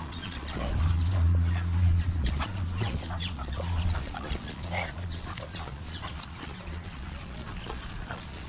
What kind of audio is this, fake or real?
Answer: fake